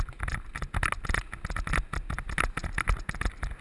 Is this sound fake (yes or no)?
no